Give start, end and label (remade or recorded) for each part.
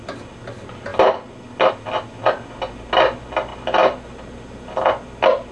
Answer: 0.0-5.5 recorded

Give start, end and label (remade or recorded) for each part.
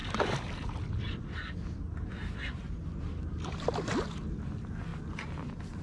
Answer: 0.0-5.8 recorded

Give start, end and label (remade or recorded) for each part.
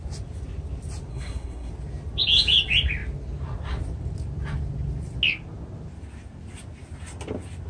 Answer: 0.0-1.1 recorded; 1.1-1.7 remade; 1.7-7.7 recorded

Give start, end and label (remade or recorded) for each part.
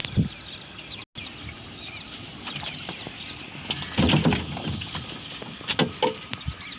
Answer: 0.0-6.8 recorded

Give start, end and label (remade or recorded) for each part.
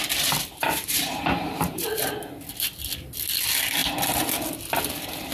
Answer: 0.0-0.6 recorded; 0.6-2.1 remade; 2.1-5.3 recorded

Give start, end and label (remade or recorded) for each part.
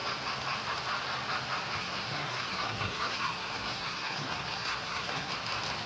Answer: 0.0-1.8 recorded; 1.8-5.3 remade; 5.3-5.9 recorded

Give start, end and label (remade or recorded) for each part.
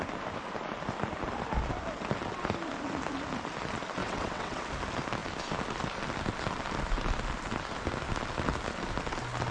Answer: 0.0-4.0 recorded; 4.0-4.6 remade; 4.6-9.5 recorded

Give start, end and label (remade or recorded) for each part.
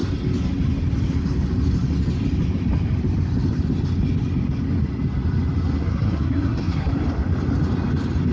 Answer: 0.0-5.8 recorded; 5.8-6.9 remade; 6.9-8.3 recorded